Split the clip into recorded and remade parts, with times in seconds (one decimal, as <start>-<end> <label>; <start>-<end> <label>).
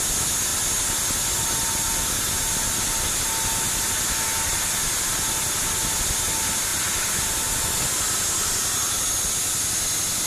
0.0-10.3 recorded